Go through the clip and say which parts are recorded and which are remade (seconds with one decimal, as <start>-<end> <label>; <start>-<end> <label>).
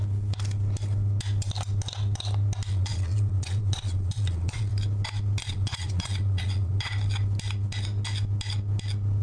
0.0-2.7 recorded; 2.7-4.7 remade; 4.7-5.4 recorded; 5.4-6.9 remade; 6.9-9.2 recorded